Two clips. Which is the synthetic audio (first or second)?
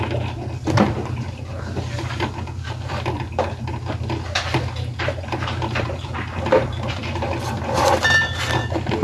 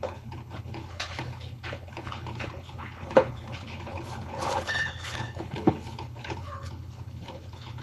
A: second